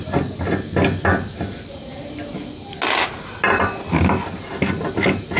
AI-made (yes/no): no